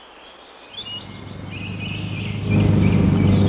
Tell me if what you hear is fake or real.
real